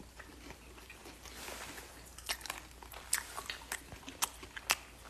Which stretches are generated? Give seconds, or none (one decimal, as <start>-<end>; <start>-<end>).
none